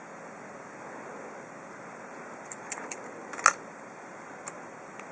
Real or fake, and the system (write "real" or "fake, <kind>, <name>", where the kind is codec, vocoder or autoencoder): real